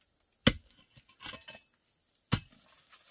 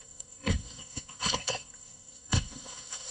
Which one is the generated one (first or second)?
second